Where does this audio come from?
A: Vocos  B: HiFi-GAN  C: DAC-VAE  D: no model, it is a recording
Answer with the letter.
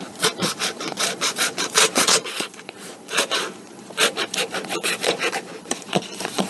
A